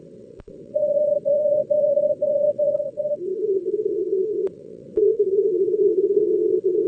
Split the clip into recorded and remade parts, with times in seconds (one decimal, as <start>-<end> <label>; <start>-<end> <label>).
0.0-6.9 remade